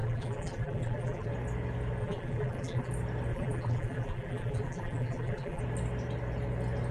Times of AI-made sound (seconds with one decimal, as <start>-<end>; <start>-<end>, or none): 0.0-1.3; 2.0-2.9; 3.3-5.6